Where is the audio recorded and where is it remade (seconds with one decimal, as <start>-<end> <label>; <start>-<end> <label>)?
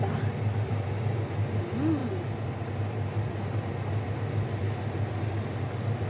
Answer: 0.0-6.1 recorded